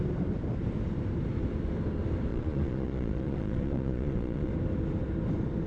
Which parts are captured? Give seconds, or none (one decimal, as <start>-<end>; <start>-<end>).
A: 0.0-2.3; 4.5-5.7